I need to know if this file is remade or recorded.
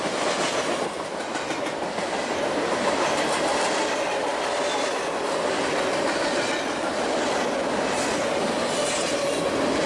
recorded